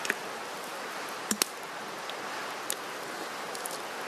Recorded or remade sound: recorded